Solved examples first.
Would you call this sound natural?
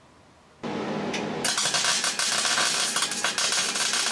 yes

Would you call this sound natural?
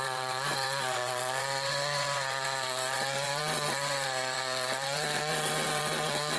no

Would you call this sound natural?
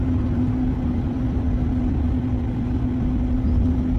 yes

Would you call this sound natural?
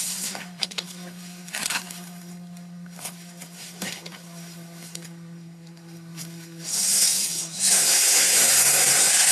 no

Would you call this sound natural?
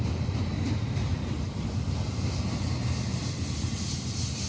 yes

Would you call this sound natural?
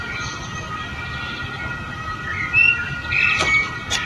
yes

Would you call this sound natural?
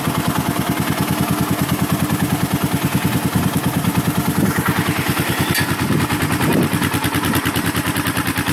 yes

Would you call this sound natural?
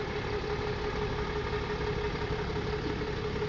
yes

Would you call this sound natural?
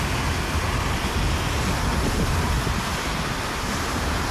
yes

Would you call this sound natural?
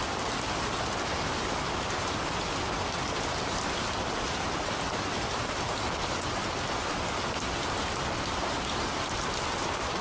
yes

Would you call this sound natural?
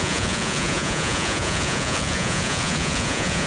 no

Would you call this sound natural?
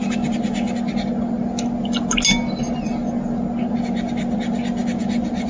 yes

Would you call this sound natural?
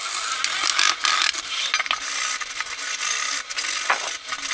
yes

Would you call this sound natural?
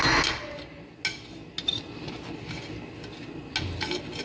yes